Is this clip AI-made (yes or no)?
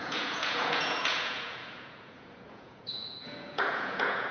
yes